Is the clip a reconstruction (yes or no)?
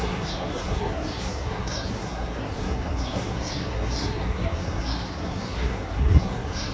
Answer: yes